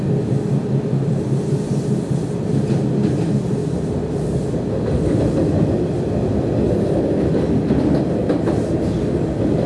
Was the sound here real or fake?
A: real